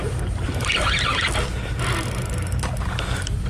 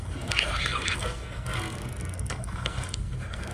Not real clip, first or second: second